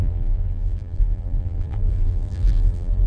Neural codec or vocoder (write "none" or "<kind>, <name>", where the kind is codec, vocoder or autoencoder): vocoder, BigVGAN v2